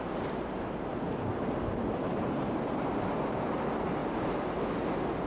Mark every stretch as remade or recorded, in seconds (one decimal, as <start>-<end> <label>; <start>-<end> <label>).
0.0-0.9 recorded; 0.9-3.5 remade; 3.5-4.0 recorded; 4.0-4.6 remade; 4.6-5.3 recorded